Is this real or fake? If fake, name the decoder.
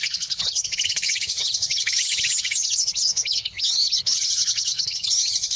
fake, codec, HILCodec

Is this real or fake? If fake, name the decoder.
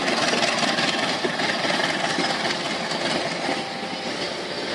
real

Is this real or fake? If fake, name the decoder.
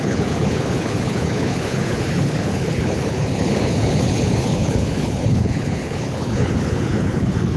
fake, codec, HILCodec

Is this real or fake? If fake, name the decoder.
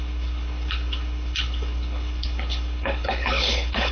fake, codec, HILCodec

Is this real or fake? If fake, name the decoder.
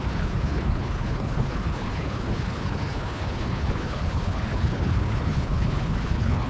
fake, codec, HILCodec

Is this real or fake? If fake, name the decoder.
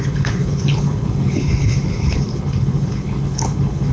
fake, codec, HILCodec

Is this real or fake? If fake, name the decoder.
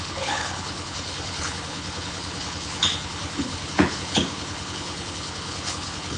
fake, codec, HILCodec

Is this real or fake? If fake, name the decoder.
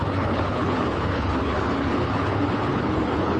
fake, codec, HILCodec